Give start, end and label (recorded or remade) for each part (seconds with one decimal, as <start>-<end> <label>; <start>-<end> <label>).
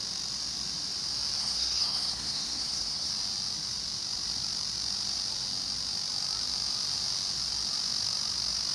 0.0-1.4 recorded; 1.4-3.1 remade; 3.1-8.7 recorded